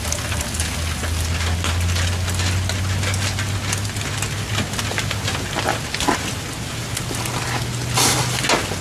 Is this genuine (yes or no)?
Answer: yes